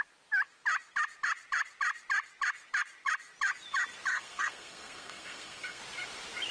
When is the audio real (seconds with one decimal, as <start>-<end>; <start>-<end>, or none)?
0.0-4.1; 5.8-6.5